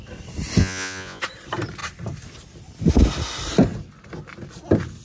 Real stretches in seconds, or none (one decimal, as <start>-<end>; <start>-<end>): 0.0-0.6; 1.2-5.0

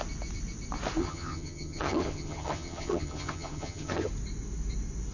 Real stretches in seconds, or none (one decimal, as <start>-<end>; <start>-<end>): 0.0-1.0; 4.1-5.1

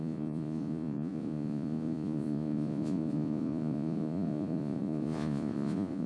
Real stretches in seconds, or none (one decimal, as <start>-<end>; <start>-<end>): none

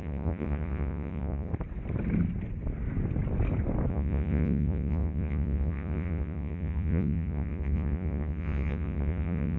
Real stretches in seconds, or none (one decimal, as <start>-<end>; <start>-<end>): 1.5-3.9

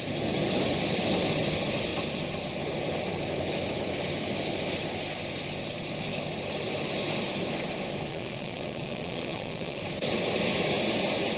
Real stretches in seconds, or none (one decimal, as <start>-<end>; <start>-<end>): 0.0-8.1; 9.8-11.4

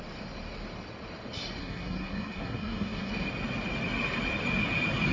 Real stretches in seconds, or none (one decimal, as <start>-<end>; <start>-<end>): 0.0-1.6; 3.1-5.1

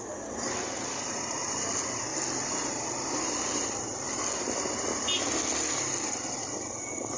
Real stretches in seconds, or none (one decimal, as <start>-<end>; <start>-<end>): 0.0-7.2